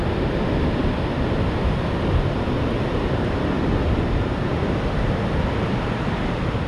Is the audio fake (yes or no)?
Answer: no